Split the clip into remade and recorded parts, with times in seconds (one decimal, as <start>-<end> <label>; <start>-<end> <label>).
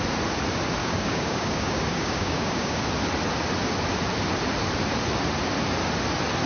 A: 0.0-0.8 recorded; 0.8-2.8 remade; 2.8-6.5 recorded